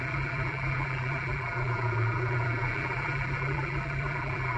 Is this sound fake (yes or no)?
yes